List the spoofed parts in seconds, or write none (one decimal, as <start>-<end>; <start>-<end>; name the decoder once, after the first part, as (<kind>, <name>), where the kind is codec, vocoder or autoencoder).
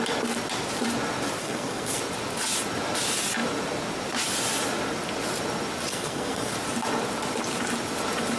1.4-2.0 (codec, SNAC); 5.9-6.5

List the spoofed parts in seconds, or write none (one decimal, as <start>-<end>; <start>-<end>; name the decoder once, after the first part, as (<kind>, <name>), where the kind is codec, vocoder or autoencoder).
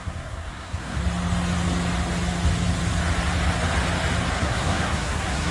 0.0-1.0 (codec, SNAC); 4.3-5.5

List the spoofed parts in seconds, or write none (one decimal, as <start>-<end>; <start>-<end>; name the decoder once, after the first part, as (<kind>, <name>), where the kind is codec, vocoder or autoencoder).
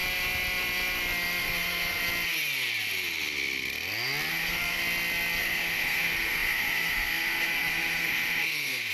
1.4-2.0 (codec, SNAC); 4.3-4.8; 5.4-8.9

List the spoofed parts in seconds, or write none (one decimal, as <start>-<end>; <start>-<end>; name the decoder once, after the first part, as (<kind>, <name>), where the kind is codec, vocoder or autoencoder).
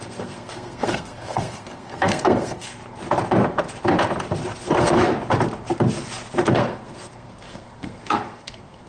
0.0-2.8 (codec, SNAC); 4.6-5.1; 6.5-8.9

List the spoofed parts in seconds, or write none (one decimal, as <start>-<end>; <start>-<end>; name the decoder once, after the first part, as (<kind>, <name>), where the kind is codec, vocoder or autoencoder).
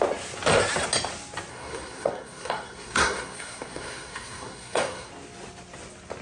1.5-5.1 (codec, SNAC)